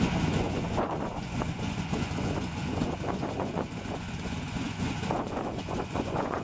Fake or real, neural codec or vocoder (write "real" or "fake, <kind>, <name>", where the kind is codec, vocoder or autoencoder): fake, vocoder, Vocos